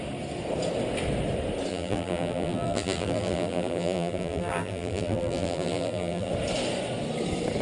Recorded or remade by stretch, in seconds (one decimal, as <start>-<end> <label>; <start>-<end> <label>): 0.0-1.7 recorded; 1.7-6.3 remade; 6.3-7.6 recorded

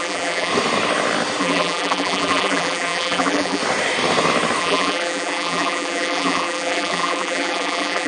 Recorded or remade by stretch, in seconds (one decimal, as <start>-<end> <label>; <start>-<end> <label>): 0.0-0.5 remade; 0.5-1.4 recorded; 1.4-3.6 remade; 3.6-4.6 recorded; 4.6-8.1 remade

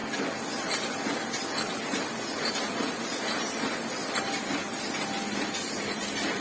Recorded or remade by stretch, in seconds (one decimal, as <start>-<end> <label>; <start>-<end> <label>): 0.0-6.4 recorded

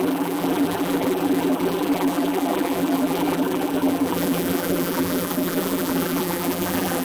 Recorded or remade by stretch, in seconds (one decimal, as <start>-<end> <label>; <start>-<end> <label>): 0.0-7.0 remade

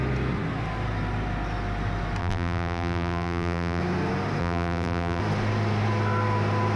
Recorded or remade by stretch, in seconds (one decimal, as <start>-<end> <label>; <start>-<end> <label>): 0.0-2.2 recorded; 2.2-3.8 remade; 3.8-4.4 recorded; 4.4-5.2 remade; 5.2-6.8 recorded

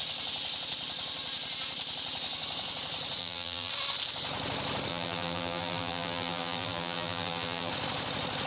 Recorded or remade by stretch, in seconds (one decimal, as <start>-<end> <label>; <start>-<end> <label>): 0.0-3.2 recorded; 3.2-3.7 remade; 3.7-4.9 recorded; 4.9-7.7 remade; 7.7-8.5 recorded

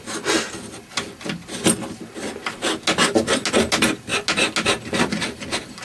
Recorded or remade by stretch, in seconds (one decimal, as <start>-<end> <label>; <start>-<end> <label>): 0.0-5.8 recorded